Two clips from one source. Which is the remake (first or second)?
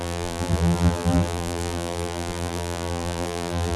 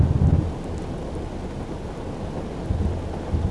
first